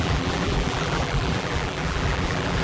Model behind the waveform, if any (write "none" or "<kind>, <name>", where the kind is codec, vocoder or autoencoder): vocoder, BigVGAN v2